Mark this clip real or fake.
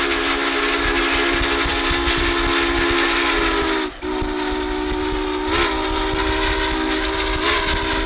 real